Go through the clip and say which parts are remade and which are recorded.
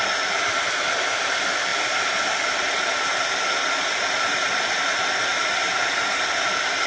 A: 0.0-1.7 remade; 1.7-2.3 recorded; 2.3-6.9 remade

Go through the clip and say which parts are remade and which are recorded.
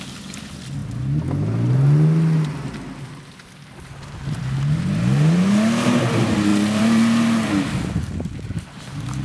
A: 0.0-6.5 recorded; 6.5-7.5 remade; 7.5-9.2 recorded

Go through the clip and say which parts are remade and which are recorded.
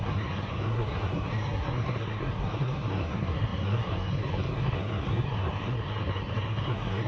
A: 0.0-7.1 remade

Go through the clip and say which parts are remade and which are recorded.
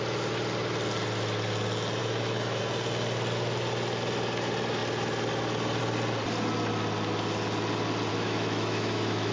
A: 0.0-2.0 recorded; 2.0-2.6 remade; 2.6-8.1 recorded; 8.1-9.3 remade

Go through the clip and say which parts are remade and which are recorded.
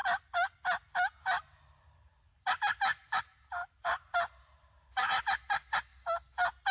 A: 0.0-2.9 recorded; 2.9-5.2 remade; 5.2-6.7 recorded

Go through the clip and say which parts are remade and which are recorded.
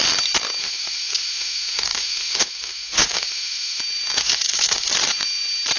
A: 0.0-0.6 recorded; 0.6-3.8 remade; 3.8-4.2 recorded; 4.2-4.9 remade; 4.9-5.8 recorded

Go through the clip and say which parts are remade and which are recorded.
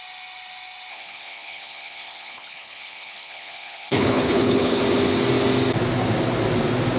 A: 0.0-0.9 recorded; 0.9-4.8 remade; 4.8-7.0 recorded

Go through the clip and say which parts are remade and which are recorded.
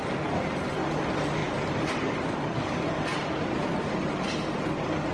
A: 0.0-1.4 recorded; 1.4-4.5 remade; 4.5-5.1 recorded